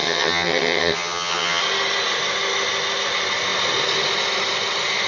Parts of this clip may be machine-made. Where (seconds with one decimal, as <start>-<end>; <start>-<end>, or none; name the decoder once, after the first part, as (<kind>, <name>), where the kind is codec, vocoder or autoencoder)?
0.0-1.6 (vocoder, HiFi-GAN)